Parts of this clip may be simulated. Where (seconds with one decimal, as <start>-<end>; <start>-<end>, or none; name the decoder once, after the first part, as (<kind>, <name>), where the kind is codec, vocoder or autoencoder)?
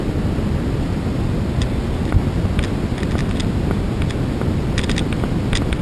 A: none